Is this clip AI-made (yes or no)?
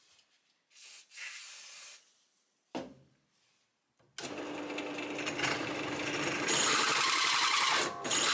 no